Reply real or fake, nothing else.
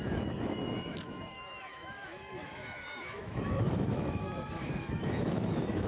fake